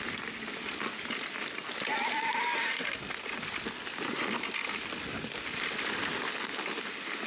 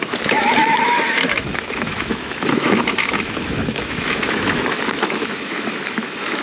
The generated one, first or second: second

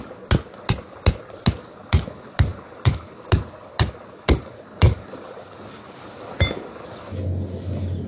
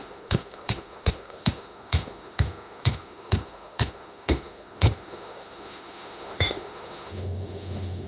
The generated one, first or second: second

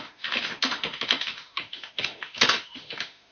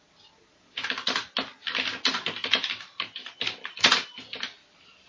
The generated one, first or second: first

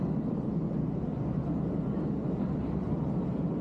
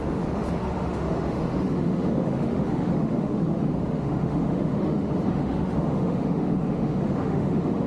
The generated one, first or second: second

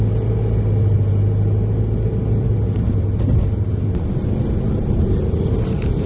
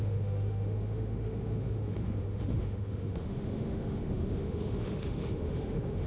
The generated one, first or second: second